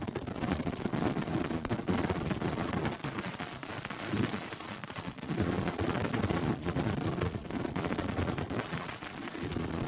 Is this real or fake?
fake